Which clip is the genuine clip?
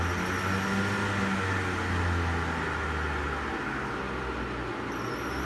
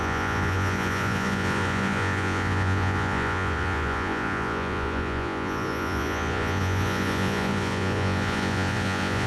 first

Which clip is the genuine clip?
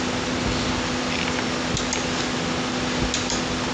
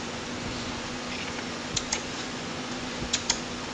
first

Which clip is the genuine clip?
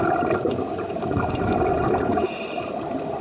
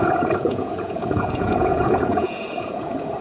first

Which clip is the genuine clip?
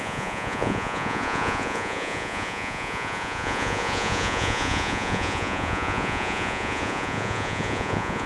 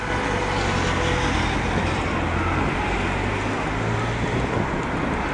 second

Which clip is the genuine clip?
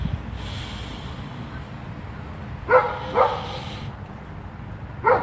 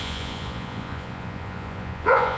first